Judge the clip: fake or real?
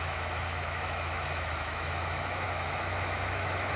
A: fake